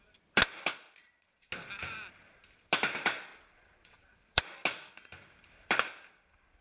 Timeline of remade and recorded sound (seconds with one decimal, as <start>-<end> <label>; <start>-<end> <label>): 0.0-0.7 recorded; 0.7-1.5 remade; 1.5-3.3 recorded; 3.3-4.4 remade; 4.4-6.6 recorded